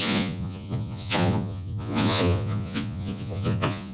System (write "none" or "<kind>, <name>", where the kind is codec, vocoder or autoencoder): vocoder, Vocos